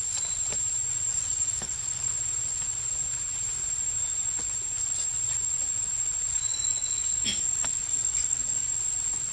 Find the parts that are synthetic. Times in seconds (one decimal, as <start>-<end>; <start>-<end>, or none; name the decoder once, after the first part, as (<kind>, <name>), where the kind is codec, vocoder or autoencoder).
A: 1.1-2.1 (codec, DAC); 6.3-8.7